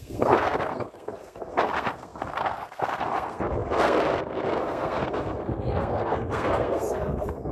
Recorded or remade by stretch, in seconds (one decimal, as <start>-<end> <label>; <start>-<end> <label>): 0.0-7.5 remade